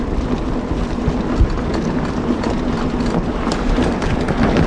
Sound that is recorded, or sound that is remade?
recorded